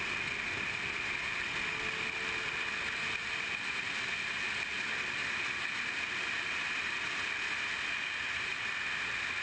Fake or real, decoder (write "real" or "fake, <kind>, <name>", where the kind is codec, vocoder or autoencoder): real